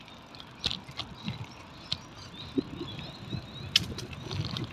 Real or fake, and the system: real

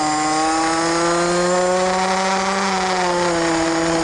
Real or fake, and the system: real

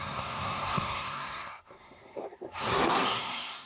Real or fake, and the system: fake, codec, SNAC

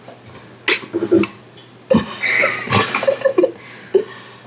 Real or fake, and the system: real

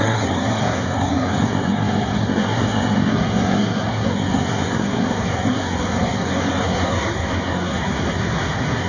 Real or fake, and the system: fake, codec, SNAC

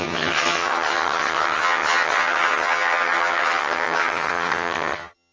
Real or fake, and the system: fake, vocoder, HiFi-GAN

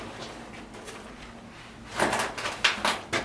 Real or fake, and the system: real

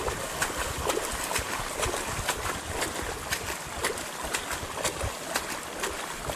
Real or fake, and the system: real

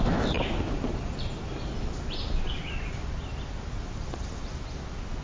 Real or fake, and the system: real